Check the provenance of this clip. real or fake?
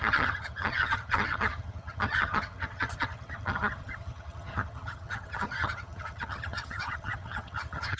fake